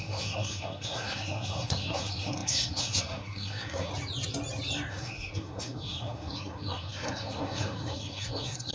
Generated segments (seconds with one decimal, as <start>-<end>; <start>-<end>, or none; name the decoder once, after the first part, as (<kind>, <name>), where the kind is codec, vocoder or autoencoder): 0.0-3.9 (codec, SNAC); 4.9-8.7